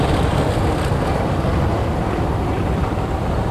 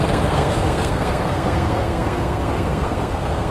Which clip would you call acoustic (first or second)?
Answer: first